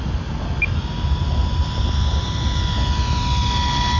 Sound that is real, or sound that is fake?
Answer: real